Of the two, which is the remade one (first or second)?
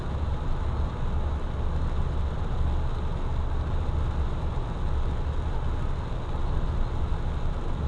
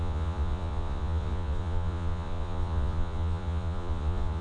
second